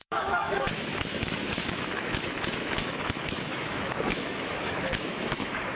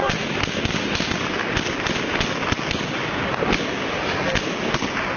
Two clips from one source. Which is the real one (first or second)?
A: second